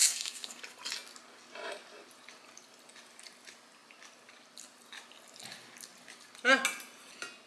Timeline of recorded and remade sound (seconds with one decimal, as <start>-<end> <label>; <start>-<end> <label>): 0.0-0.6 remade; 0.6-7.5 recorded